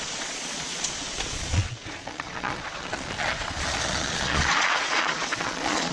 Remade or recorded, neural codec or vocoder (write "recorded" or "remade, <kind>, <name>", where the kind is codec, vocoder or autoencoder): remade, vocoder, Vocos